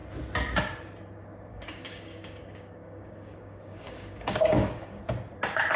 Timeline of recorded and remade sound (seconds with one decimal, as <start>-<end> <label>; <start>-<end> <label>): 0.0-1.5 recorded; 1.5-5.0 remade; 5.0-5.8 recorded